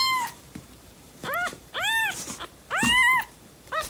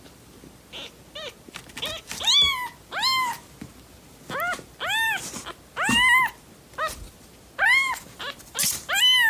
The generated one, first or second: first